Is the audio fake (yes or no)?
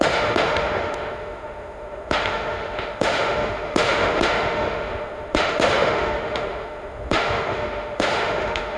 yes